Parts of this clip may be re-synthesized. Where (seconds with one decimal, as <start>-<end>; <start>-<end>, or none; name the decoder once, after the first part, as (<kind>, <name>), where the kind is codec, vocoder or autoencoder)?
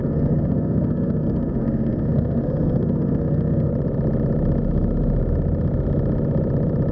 0.0-3.7 (codec, SNAC)